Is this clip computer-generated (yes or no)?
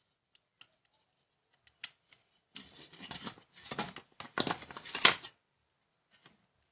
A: no